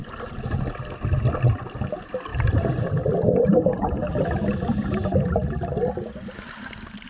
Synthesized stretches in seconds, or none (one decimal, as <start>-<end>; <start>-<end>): 2.3-2.9; 3.5-4.1